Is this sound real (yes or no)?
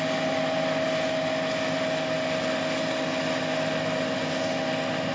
yes